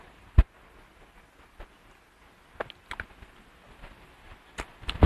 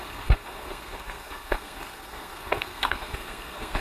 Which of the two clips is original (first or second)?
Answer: first